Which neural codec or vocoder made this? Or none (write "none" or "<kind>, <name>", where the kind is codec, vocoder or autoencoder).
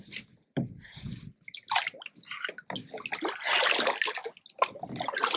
none